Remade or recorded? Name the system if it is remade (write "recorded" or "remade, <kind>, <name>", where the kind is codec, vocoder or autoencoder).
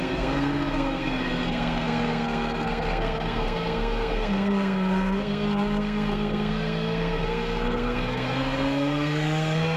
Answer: remade, codec, SNAC